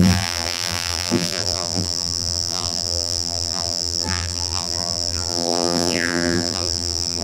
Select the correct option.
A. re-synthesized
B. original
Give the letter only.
A